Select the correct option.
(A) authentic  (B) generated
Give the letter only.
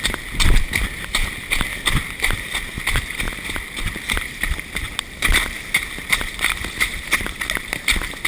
A